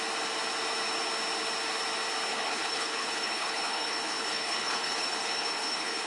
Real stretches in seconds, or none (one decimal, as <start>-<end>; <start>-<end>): 0.0-2.3